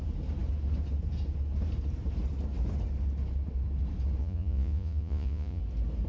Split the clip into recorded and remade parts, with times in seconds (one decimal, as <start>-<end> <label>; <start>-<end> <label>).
0.0-4.2 recorded; 4.2-5.6 remade; 5.6-6.1 recorded